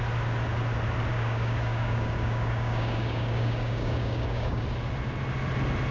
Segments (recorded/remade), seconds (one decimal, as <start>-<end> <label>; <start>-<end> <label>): 0.0-1.1 recorded; 1.1-4.6 remade; 4.6-5.9 recorded